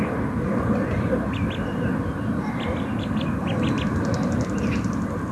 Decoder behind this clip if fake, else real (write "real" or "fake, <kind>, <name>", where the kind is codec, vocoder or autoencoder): real